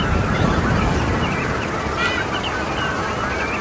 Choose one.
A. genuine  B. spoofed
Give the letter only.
A